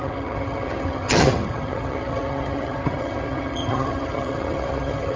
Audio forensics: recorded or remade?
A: remade